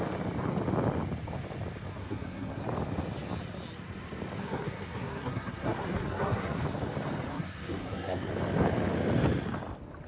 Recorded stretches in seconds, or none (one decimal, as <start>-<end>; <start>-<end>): 0.0-2.0; 2.6-4.4; 6.6-7.3; 8.3-10.1